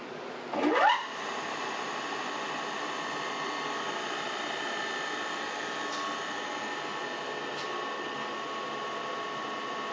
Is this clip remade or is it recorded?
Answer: recorded